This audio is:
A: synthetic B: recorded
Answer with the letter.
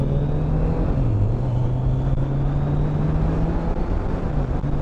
B